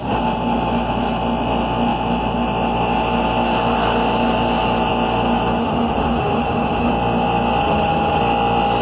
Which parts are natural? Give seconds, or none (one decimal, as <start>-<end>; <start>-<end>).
0.0-5.6; 6.9-7.6; 8.2-8.8